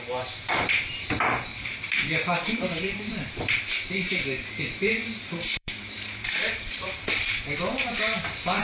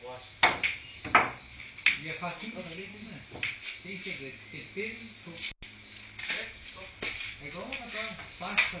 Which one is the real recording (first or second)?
second